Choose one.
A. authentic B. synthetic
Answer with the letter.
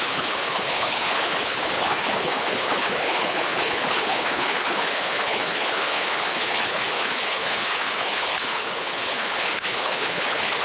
B